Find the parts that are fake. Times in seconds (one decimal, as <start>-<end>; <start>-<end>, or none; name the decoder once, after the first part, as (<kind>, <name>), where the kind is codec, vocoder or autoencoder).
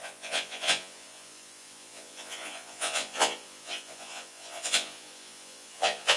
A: 0.0-6.2 (vocoder, Vocos)